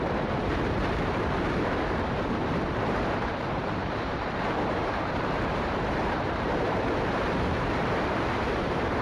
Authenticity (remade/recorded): remade